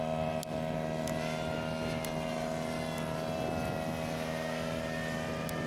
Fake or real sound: real